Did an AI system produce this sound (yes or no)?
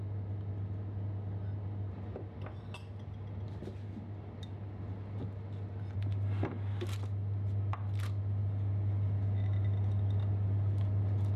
no